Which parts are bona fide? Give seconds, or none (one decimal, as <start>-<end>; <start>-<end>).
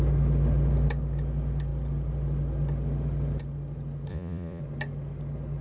0.0-4.1; 4.6-5.6